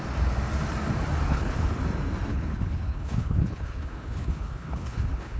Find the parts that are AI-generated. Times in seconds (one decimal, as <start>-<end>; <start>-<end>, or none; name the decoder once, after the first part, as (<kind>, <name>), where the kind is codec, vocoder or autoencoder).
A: 1.3-1.8 (codec, HILCodec); 2.3-5.4